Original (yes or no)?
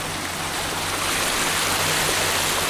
yes